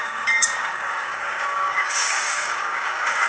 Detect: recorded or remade remade